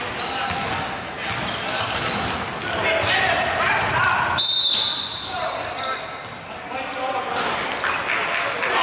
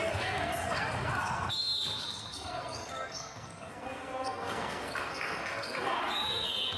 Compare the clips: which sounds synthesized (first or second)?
second